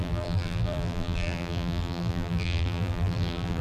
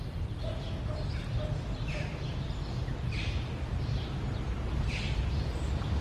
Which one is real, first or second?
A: second